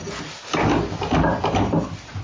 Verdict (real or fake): real